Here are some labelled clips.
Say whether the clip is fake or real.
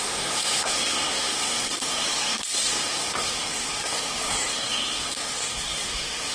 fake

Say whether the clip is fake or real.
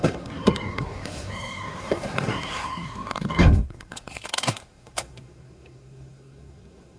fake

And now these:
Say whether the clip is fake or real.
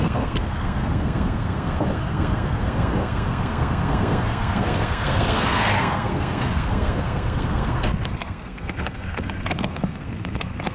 fake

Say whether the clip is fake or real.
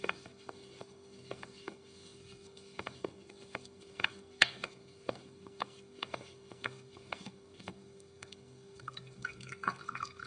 fake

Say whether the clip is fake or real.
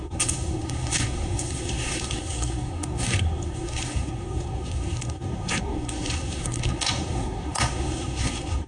fake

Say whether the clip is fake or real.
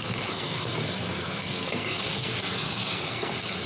fake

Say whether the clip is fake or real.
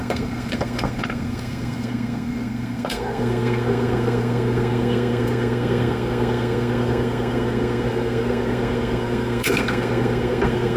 fake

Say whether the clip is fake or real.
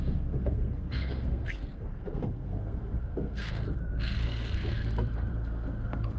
fake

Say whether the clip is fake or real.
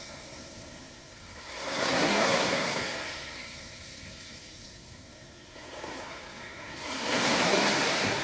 fake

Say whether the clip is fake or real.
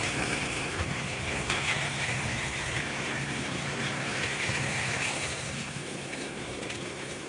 fake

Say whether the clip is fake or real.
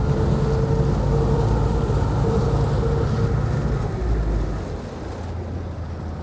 real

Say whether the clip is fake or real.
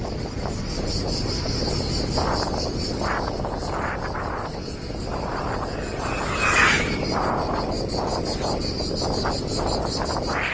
real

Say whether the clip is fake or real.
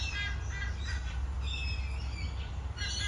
real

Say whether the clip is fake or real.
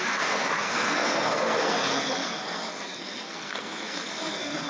fake